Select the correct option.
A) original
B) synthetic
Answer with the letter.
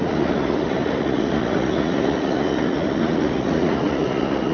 B